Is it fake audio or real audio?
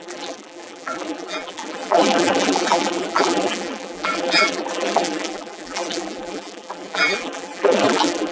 fake